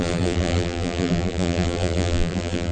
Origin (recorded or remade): remade